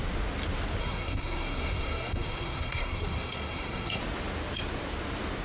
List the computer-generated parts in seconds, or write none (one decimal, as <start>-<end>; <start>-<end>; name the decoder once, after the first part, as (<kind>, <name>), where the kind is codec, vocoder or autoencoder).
0.8-4.0 (codec, SNAC)